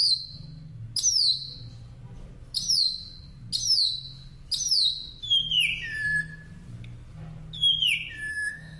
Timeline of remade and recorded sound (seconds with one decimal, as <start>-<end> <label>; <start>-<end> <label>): 0.0-8.3 recorded; 8.3-8.8 remade